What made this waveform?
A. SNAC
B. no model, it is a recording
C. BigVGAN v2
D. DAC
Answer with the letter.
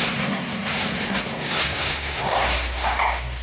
A